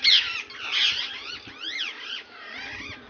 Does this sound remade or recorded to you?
recorded